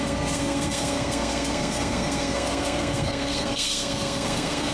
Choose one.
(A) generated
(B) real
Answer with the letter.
A